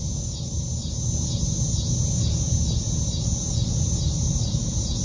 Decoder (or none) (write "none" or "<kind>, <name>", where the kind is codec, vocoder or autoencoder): none